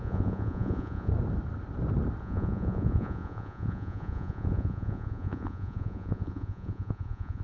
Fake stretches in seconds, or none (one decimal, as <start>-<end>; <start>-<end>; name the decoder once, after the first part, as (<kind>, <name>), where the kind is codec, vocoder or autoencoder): 0.0-1.1 (vocoder, Vocos); 2.2-7.4